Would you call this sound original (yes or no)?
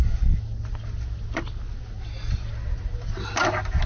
yes